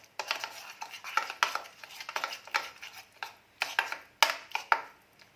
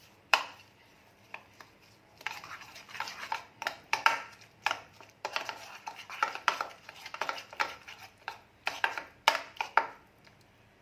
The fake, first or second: second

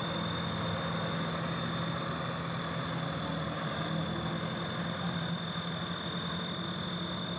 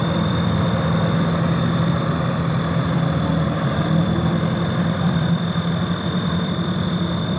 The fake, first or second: second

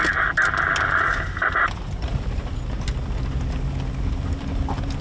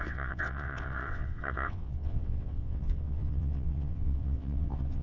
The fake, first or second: second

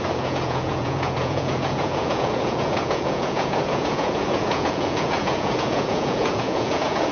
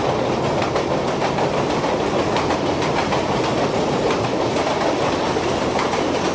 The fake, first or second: first